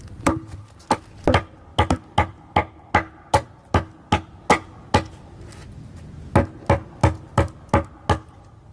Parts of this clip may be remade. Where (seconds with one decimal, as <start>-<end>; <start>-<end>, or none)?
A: none